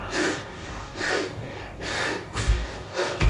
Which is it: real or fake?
fake